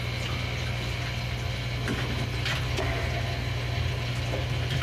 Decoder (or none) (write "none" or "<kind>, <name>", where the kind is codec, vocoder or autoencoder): none